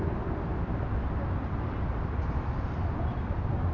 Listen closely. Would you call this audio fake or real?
real